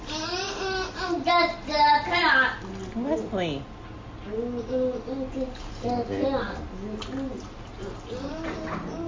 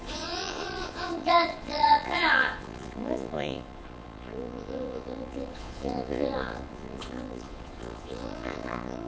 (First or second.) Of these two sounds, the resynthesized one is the second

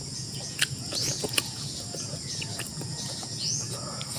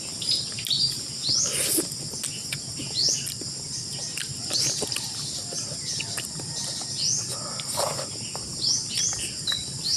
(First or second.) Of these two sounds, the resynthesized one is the first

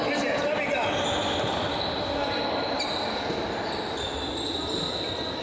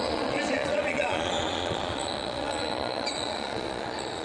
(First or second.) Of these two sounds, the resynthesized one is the second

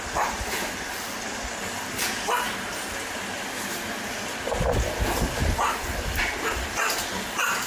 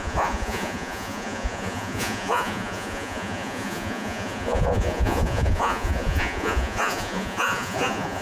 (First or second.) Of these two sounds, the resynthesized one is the second